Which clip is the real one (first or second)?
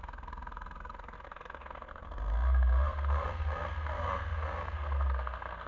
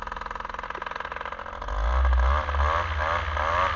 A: second